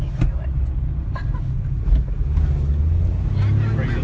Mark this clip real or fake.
real